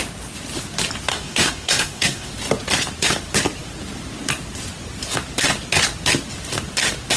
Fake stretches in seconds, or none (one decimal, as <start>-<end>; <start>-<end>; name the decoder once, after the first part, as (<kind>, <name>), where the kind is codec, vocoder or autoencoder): 1.1-2.3 (codec, SNAC)